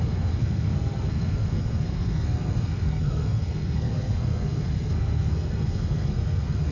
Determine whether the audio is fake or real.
fake